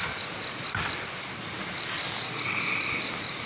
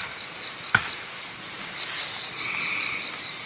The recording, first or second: first